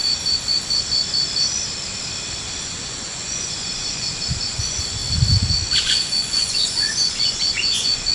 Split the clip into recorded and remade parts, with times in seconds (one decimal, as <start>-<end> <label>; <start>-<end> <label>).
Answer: 0.0-2.6 recorded; 2.6-5.0 remade; 5.0-5.8 recorded; 5.8-8.1 remade